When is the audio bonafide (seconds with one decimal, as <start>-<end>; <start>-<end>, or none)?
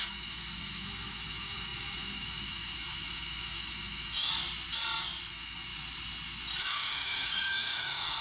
4.3-5.3; 5.7-6.6